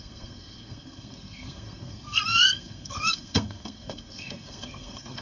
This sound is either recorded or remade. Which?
remade